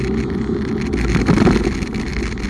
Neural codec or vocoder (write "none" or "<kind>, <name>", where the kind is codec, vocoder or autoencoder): none